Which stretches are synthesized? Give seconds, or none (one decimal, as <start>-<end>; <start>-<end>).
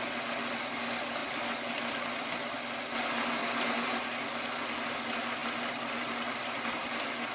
none